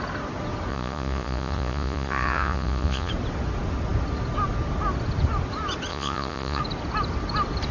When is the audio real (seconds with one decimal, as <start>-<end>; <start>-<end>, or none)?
0.0-0.7; 3.1-5.9; 6.6-7.7